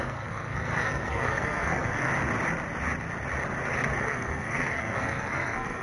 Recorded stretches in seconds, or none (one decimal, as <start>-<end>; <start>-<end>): 2.1-4.0